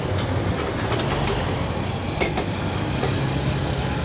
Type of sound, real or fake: real